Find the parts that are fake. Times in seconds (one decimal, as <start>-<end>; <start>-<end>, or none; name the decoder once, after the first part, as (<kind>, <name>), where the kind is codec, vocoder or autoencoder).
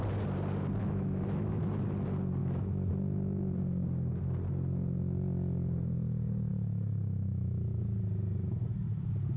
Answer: 0.8-1.6 (autoencoder, DAC-VAE); 2.4-2.9; 6.5-7.7